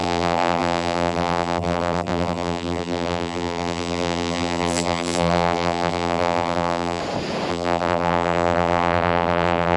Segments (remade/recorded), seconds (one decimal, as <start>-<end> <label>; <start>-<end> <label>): 0.0-7.0 remade; 7.0-7.5 recorded; 7.5-9.8 remade